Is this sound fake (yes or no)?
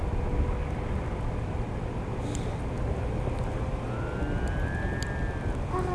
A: no